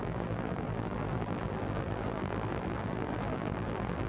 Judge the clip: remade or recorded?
remade